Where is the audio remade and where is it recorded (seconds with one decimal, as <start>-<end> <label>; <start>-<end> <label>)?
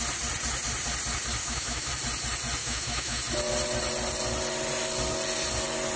0.0-1.4 recorded; 1.4-1.9 remade; 1.9-2.6 recorded; 2.6-3.2 remade; 3.2-6.0 recorded